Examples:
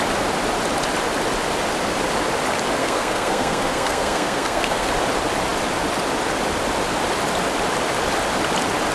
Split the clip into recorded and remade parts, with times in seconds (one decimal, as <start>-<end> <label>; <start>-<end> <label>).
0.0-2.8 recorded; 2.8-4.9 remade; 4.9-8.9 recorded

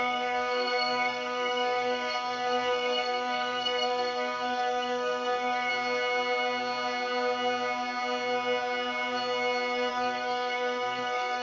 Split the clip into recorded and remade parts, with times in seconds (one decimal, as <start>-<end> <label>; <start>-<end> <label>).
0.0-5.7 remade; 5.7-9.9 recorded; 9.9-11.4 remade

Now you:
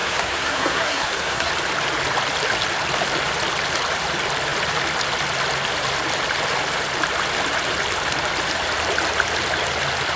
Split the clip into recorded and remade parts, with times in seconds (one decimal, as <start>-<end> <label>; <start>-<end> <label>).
0.0-1.5 remade; 1.5-10.2 recorded

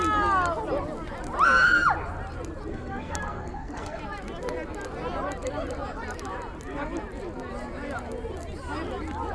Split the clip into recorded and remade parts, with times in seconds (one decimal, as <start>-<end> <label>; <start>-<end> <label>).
0.0-2.7 recorded; 2.7-4.0 remade; 4.0-9.3 recorded

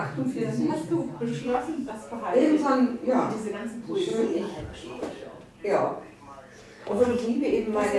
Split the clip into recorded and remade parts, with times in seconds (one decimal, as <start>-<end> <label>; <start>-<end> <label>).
0.0-1.3 recorded; 1.3-1.9 remade; 1.9-6.6 recorded; 6.6-7.3 remade; 7.3-8.0 recorded

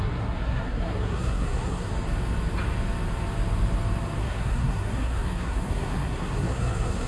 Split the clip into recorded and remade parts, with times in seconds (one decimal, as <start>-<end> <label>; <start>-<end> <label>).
0.0-1.9 remade; 1.9-4.2 recorded; 4.2-7.1 remade